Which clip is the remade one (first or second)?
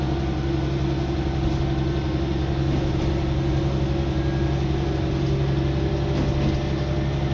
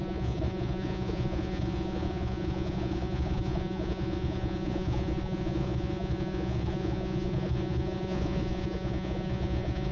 second